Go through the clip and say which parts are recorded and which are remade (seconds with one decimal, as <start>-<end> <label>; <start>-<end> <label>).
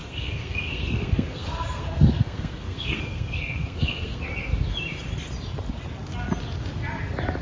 0.0-4.2 remade; 4.2-7.4 recorded